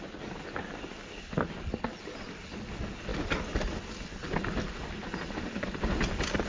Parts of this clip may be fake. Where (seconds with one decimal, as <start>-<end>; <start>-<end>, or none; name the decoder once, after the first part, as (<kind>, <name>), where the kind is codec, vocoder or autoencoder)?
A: none